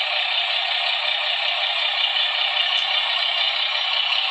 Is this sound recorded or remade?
recorded